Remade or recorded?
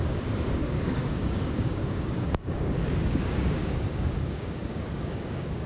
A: remade